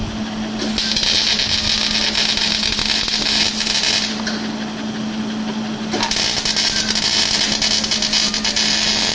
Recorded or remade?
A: recorded